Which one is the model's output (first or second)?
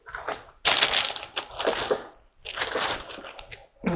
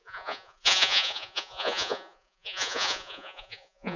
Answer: second